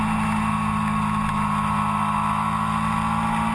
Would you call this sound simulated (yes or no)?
no